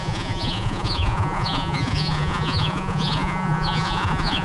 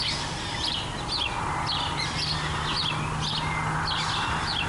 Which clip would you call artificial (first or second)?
first